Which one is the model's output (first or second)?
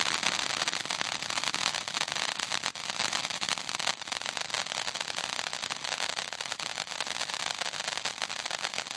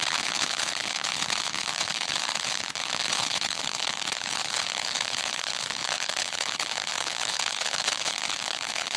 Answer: second